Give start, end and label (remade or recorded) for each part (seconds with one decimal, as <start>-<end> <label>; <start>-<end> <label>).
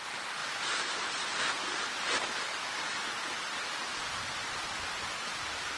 0.0-5.8 recorded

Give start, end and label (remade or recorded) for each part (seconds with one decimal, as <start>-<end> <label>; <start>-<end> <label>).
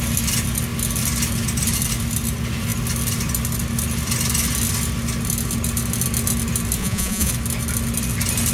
0.0-6.8 recorded; 6.8-7.3 remade; 7.3-8.5 recorded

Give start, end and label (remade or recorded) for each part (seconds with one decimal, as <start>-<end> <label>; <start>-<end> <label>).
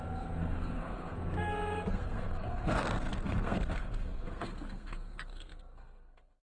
0.0-6.4 remade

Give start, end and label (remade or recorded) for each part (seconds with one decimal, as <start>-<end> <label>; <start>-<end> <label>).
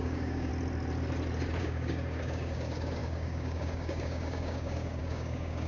0.0-0.5 remade; 0.5-1.6 recorded; 1.6-5.7 remade